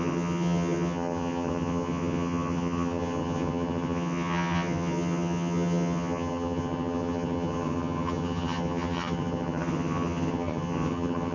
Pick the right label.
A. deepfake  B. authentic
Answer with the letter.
A